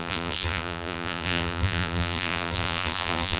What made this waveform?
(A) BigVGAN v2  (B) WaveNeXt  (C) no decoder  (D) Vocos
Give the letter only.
A